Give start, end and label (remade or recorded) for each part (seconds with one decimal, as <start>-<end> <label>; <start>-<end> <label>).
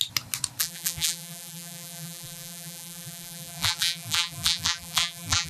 0.0-0.6 recorded; 0.6-5.5 remade